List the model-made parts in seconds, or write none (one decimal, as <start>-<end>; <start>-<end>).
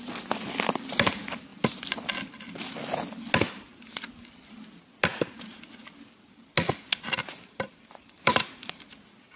7.2-8.7